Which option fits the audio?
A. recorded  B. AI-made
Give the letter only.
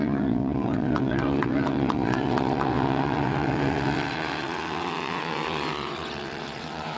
B